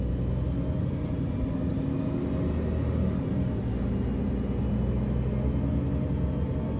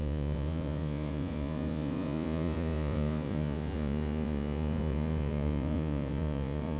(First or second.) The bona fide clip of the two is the first